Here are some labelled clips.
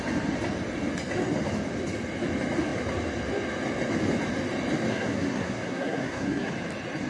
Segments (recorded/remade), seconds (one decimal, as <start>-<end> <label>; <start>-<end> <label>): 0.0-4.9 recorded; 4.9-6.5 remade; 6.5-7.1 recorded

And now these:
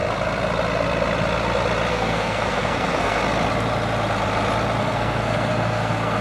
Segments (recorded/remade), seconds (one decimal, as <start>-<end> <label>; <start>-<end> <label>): 0.0-1.9 recorded; 1.9-3.2 remade; 3.2-4.8 recorded; 4.8-6.2 remade

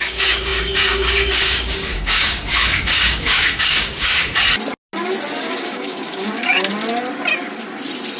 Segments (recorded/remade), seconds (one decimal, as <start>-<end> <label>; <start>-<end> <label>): 0.0-4.3 remade; 4.3-5.4 recorded; 5.4-6.7 remade; 6.7-8.2 recorded